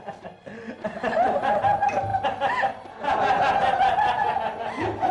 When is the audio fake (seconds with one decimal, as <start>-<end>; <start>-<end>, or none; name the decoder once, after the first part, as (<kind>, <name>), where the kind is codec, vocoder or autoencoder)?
none